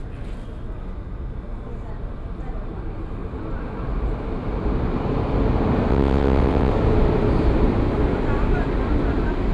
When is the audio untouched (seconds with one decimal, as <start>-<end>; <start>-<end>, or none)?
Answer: 0.0-5.9; 6.7-9.5

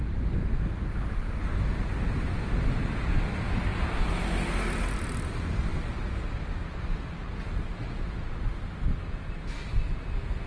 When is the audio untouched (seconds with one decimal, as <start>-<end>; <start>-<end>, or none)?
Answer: 0.0-10.5

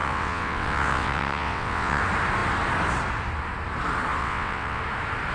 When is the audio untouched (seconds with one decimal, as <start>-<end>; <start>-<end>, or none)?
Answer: 2.0-4.2; 4.8-5.3

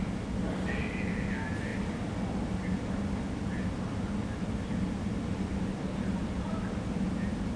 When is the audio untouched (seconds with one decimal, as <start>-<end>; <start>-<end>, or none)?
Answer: 0.0-7.6

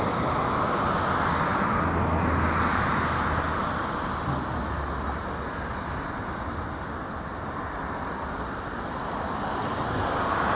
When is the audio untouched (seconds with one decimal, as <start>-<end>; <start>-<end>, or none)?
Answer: 0.0-10.5